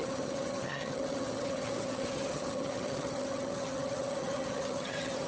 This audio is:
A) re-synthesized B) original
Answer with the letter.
A